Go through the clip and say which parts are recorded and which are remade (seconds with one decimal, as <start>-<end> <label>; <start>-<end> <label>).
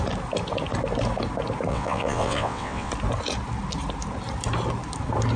0.0-1.7 recorded; 1.7-2.9 remade; 2.9-5.4 recorded